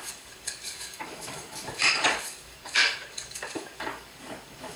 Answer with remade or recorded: remade